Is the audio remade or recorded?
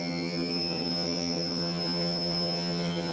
remade